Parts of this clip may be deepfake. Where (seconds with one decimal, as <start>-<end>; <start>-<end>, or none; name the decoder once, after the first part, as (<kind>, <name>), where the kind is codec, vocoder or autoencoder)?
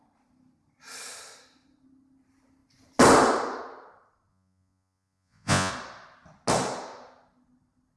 4.3-5.7 (vocoder, Vocos)